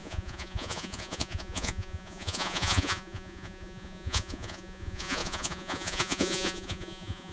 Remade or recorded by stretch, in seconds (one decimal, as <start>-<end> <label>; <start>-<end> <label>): 0.0-7.3 remade